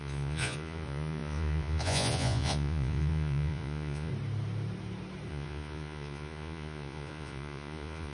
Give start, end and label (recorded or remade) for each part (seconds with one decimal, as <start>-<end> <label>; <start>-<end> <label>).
0.0-4.1 remade; 4.1-5.3 recorded; 5.3-8.1 remade